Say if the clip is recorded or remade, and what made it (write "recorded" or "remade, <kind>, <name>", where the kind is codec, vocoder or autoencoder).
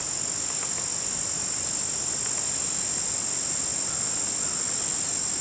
recorded